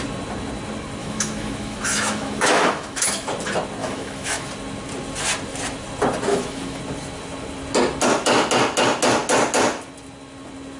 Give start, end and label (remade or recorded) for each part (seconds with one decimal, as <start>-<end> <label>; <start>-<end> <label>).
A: 0.0-1.0 recorded; 1.0-3.3 remade; 3.3-3.8 recorded; 3.8-4.5 remade; 4.5-6.3 recorded; 6.3-6.8 remade; 6.8-10.8 recorded